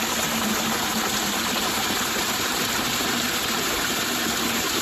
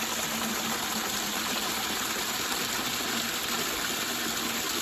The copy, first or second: first